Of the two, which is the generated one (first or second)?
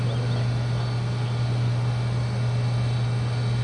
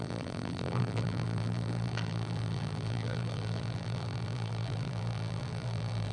second